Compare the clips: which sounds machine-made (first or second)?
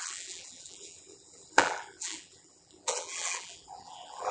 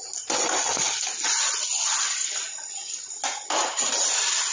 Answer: first